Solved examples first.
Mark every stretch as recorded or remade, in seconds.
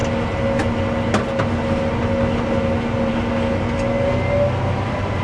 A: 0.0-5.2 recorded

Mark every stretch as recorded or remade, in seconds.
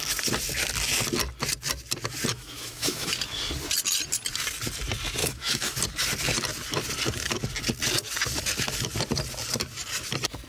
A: 0.0-2.3 recorded; 2.3-3.1 remade; 3.1-5.2 recorded; 5.2-5.8 remade; 5.8-10.5 recorded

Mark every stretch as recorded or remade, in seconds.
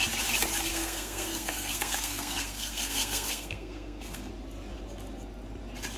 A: 0.0-0.7 recorded; 0.7-4.3 remade; 4.3-6.0 recorded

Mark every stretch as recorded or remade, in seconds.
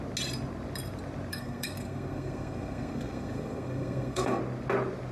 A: 0.0-1.3 recorded; 1.3-4.4 remade; 4.4-5.1 recorded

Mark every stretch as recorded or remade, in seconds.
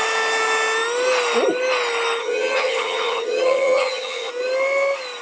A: 0.0-2.2 recorded; 2.2-4.3 remade; 4.3-5.2 recorded